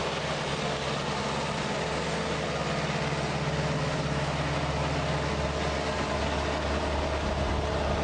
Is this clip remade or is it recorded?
recorded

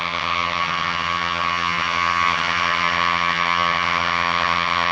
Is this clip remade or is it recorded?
remade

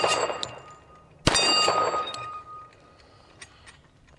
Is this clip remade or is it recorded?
recorded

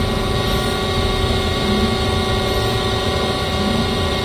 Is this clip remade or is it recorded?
recorded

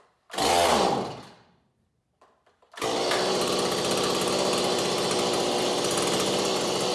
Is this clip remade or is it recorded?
recorded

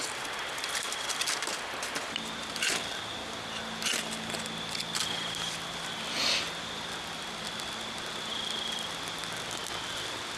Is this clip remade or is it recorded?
recorded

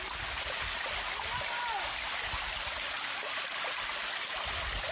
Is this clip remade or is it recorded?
recorded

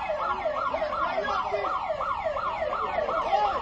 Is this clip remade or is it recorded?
recorded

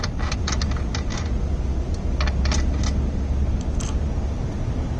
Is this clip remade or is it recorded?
recorded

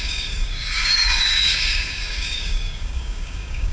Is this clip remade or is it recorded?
remade